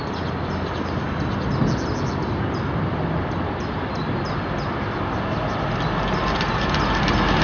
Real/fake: real